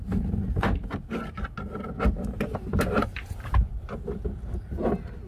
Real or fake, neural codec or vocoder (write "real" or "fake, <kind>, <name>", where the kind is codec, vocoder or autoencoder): real